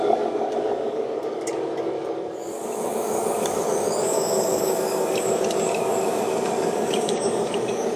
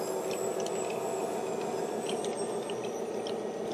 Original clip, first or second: second